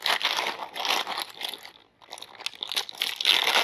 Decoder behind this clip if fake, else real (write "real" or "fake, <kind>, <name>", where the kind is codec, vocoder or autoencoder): real